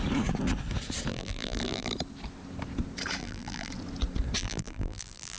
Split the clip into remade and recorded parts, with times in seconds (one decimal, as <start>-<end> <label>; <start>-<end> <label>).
0.0-1.1 recorded; 1.1-1.9 remade; 1.9-3.2 recorded; 3.2-3.7 remade; 3.7-4.4 recorded; 4.4-5.4 remade